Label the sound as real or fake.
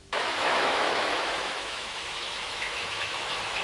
fake